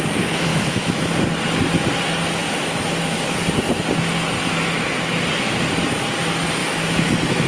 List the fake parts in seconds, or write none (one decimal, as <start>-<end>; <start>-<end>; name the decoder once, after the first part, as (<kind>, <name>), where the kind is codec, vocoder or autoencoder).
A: 0.5-1.1 (autoencoder, DAC-VAE); 6.6-7.5